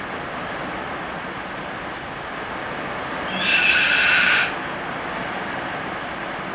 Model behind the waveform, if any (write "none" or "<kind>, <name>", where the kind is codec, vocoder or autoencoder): none